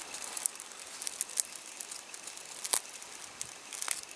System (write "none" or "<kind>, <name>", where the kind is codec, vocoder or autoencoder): none